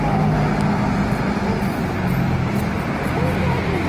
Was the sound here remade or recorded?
recorded